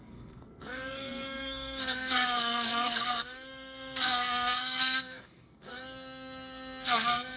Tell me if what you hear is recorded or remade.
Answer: remade